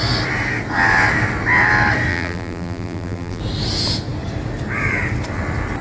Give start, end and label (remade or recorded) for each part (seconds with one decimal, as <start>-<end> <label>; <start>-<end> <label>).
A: 0.0-2.1 recorded; 2.1-3.4 remade; 3.4-5.8 recorded